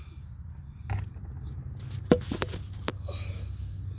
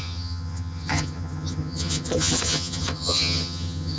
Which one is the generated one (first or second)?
second